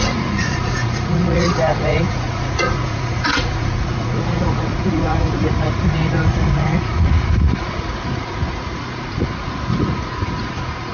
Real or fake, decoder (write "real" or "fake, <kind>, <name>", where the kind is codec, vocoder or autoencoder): fake, vocoder, Vocos